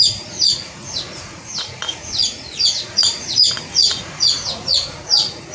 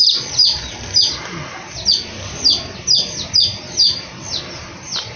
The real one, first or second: second